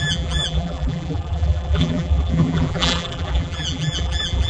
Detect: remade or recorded remade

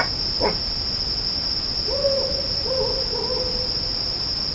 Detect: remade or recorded recorded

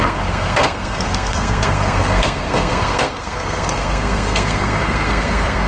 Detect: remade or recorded remade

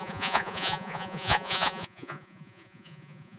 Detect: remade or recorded remade